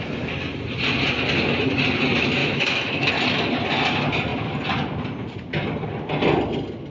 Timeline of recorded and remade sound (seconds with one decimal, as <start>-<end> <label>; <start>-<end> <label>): 0.0-2.4 recorded; 2.4-3.1 remade; 3.1-6.9 recorded

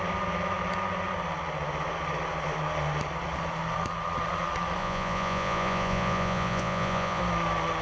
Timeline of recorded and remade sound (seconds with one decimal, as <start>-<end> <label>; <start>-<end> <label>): 0.0-4.8 recorded; 4.8-7.2 remade; 7.2-7.8 recorded